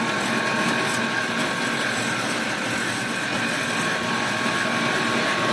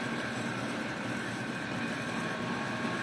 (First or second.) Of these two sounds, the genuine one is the first